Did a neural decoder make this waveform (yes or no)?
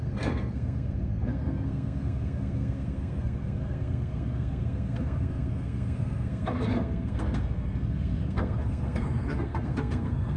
yes